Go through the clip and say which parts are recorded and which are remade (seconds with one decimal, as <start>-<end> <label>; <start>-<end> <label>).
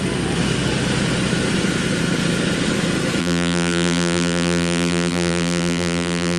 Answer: 0.0-3.2 recorded; 3.2-6.4 remade